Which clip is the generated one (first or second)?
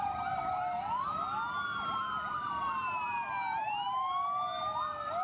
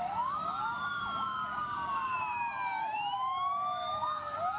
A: second